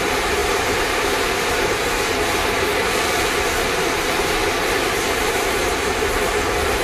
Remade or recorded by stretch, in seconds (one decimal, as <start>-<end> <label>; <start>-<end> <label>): 0.0-2.7 remade; 2.7-3.7 recorded; 3.7-4.4 remade; 4.4-5.1 recorded; 5.1-6.8 remade

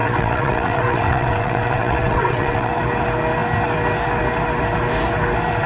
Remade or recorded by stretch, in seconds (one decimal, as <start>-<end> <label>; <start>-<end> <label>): 0.0-2.7 remade; 2.7-5.7 recorded

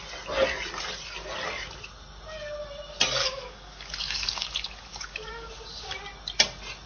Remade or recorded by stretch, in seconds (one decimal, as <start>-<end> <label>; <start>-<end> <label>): 0.0-3.2 recorded; 3.2-5.5 remade; 5.5-6.9 recorded

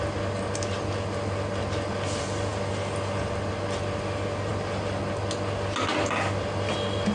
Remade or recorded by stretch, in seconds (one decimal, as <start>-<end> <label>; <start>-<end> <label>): 0.0-7.1 recorded

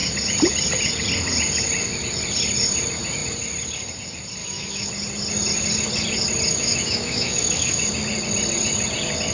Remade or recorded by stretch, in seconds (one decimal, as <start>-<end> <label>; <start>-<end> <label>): 0.0-4.4 recorded; 4.4-4.9 remade; 4.9-6.5 recorded; 6.5-7.8 remade; 7.8-9.3 recorded

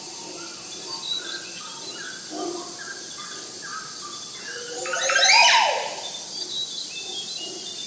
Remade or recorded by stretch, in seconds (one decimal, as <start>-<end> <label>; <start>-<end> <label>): 0.0-1.1 recorded; 1.1-1.8 remade; 1.8-7.9 recorded

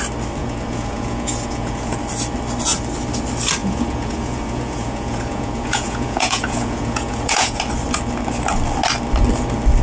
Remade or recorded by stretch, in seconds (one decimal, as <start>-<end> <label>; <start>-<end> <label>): 0.0-0.4 recorded; 0.4-2.0 remade; 2.0-3.6 recorded; 3.6-7.6 remade; 7.6-9.8 recorded